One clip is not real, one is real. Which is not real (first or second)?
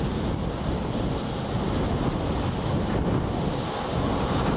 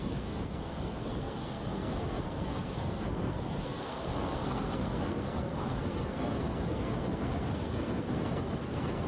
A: second